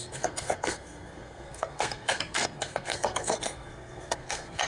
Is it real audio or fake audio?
fake